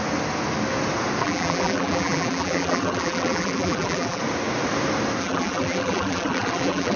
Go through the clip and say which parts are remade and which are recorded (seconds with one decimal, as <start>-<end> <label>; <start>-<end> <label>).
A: 0.0-1.2 recorded; 1.2-4.2 remade; 4.2-5.2 recorded; 5.2-7.0 remade